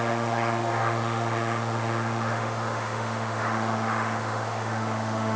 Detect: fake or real fake